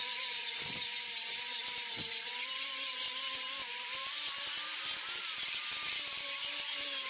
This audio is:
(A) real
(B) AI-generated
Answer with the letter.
A